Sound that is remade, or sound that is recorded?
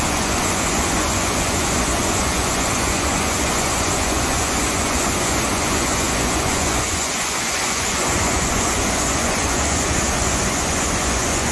remade